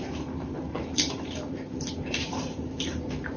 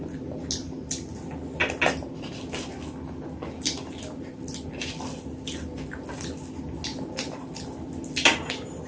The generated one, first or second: first